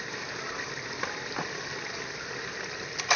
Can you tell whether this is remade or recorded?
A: recorded